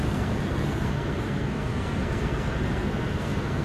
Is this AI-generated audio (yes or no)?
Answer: yes